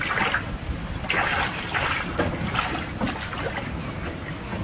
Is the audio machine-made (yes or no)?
no